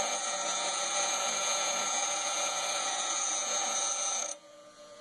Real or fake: fake